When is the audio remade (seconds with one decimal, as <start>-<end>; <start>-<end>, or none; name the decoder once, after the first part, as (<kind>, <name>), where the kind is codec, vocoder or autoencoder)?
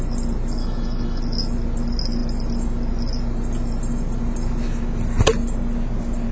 0.6-1.2 (autoencoder, DAC-VAE)